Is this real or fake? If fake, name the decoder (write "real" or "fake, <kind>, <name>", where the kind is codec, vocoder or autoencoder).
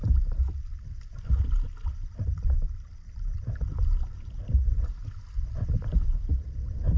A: real